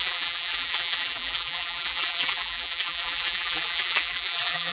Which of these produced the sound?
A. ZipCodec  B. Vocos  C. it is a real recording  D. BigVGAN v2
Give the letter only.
D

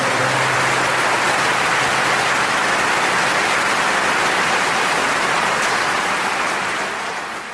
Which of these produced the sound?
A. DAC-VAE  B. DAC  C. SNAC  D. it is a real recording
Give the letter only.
D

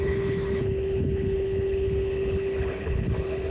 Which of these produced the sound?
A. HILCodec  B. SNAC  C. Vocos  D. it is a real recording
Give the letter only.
A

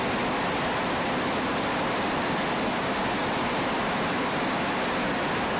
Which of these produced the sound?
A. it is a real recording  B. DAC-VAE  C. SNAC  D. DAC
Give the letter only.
A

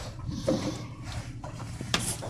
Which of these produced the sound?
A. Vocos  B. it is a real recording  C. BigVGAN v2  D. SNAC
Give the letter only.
C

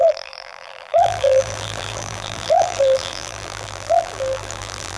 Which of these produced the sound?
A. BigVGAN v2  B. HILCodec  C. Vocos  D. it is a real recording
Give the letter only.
A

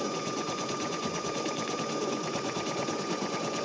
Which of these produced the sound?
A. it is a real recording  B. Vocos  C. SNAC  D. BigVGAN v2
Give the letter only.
B